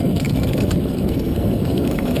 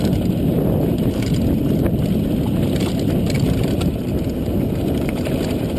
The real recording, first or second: second